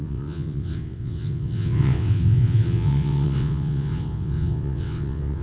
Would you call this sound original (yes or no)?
no